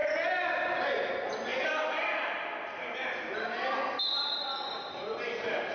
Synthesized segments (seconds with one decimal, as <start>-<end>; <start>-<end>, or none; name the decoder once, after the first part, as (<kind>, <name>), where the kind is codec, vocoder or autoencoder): 1.5-4.9 (vocoder, BigVGAN v2)